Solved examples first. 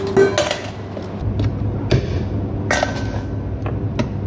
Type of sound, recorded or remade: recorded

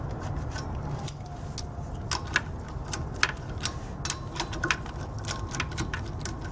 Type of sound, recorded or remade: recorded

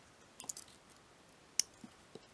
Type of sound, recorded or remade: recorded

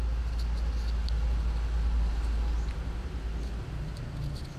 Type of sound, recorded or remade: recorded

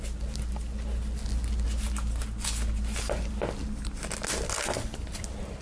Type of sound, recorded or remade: recorded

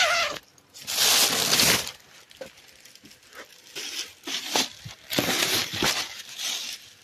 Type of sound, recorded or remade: recorded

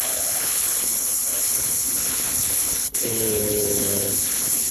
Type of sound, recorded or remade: remade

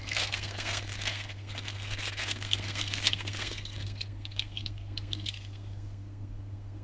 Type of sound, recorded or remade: remade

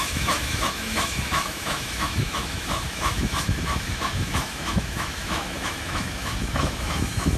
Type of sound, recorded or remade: remade